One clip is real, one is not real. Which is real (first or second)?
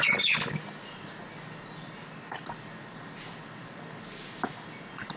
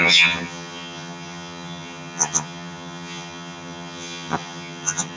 first